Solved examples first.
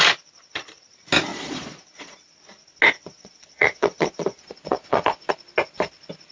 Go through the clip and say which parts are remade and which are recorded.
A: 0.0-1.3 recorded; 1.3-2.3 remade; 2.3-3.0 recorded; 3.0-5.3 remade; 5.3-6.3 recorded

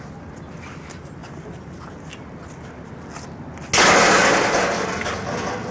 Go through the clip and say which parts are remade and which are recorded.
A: 0.0-5.7 recorded

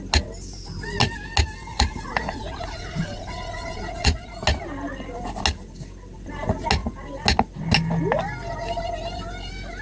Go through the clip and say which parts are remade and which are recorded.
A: 0.0-1.7 recorded; 1.7-4.3 remade; 4.3-9.8 recorded

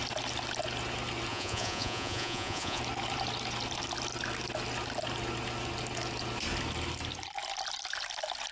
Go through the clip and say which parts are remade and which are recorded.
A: 0.0-1.3 recorded; 1.3-2.8 remade; 2.8-8.5 recorded

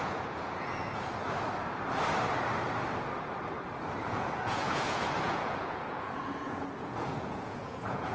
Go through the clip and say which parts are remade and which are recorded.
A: 0.0-0.9 remade; 0.9-4.0 recorded; 4.0-8.1 remade

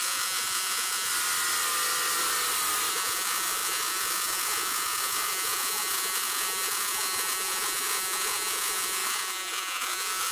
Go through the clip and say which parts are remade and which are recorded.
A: 0.0-1.1 remade; 1.1-2.9 recorded; 2.9-10.3 remade

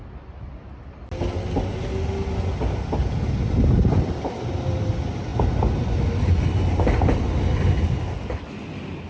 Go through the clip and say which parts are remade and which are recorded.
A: 0.0-9.1 recorded

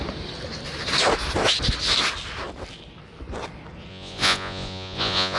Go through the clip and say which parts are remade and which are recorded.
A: 0.0-3.9 recorded; 3.9-5.4 remade